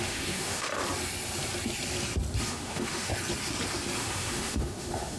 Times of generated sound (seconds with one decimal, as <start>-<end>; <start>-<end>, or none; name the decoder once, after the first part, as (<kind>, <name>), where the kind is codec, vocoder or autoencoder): 0.0-0.7 (autoencoder, DAC-VAE); 2.5-3.1; 4.0-5.2